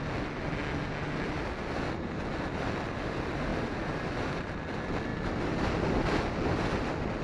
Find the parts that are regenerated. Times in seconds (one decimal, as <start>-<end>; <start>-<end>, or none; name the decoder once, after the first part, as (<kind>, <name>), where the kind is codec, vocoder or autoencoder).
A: 3.5-4.1 (vocoder, BigVGAN v2); 5.1-5.7